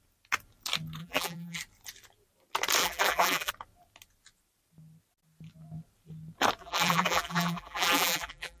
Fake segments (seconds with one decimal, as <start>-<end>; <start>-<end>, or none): 1.0-1.6; 2.8-3.5; 6.6-8.6